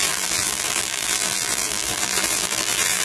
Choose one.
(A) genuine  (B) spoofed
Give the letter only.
B